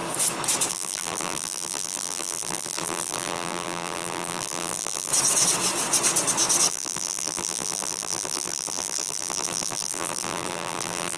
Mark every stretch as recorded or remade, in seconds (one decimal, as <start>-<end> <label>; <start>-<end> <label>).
0.0-0.7 recorded; 0.7-5.1 remade; 5.1-6.7 recorded; 6.7-11.2 remade